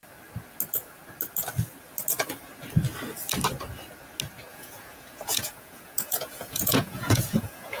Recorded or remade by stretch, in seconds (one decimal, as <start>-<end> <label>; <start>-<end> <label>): 0.0-4.5 recorded; 4.5-7.8 remade